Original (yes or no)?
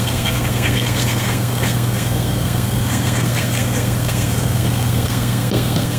no